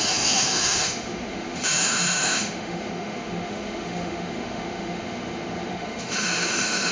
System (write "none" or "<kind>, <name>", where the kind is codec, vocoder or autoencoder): autoencoder, DAC-VAE